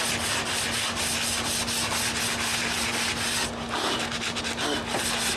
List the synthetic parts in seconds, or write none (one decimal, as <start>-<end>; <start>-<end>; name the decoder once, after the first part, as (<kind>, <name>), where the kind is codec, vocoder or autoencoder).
none